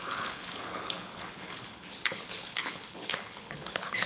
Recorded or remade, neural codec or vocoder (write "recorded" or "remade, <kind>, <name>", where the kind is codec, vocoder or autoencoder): remade, codec, HILCodec